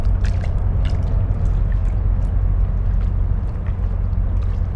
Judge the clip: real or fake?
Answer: real